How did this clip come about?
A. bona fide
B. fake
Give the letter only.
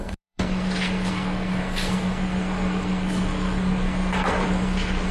B